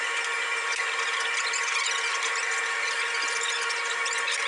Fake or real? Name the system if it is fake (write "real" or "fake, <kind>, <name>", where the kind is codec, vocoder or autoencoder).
real